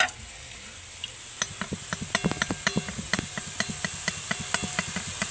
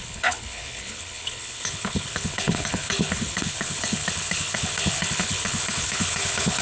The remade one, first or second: second